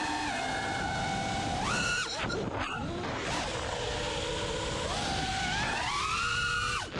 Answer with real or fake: real